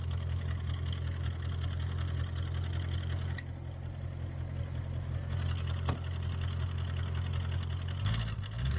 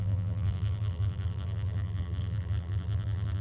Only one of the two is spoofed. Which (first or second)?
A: second